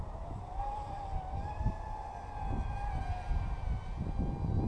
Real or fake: real